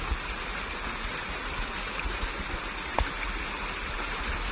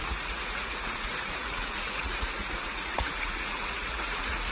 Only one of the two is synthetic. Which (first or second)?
second